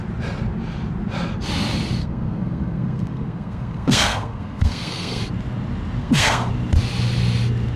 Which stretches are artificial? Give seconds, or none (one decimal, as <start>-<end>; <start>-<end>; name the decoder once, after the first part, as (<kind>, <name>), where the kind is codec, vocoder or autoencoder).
2.0-5.2 (codec, SNAC); 6.0-6.5